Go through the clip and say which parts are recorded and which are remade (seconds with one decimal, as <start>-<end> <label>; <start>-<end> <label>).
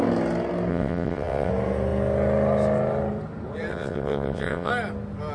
0.0-0.7 recorded; 0.7-1.5 remade; 1.5-3.7 recorded; 3.7-4.7 remade; 4.7-5.3 recorded